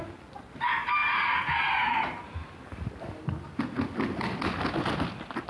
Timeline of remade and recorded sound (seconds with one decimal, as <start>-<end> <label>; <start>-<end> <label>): 0.0-5.5 recorded